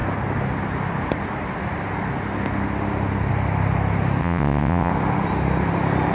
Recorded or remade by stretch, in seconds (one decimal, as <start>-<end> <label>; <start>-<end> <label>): 0.0-4.2 recorded; 4.2-4.9 remade; 4.9-6.1 recorded